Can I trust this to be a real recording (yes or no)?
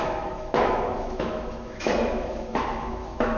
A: no